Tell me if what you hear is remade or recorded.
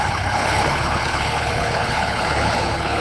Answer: remade